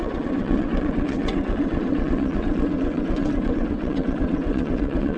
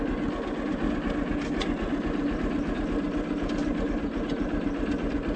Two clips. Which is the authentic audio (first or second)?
second